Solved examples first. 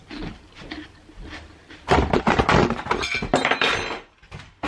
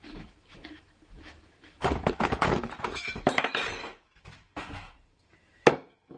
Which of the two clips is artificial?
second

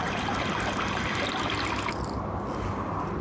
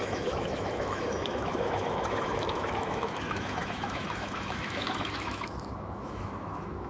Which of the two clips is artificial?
second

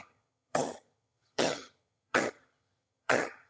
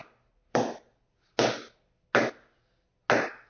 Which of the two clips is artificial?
first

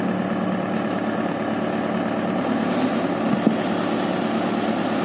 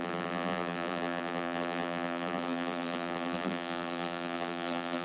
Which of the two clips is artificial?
second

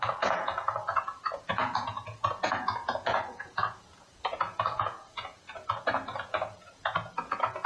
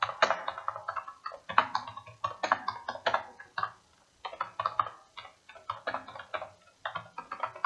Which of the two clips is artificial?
first